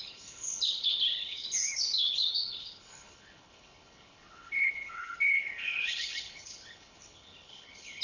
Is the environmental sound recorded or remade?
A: remade